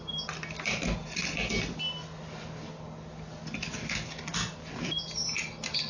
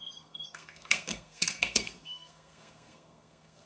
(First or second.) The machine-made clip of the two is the second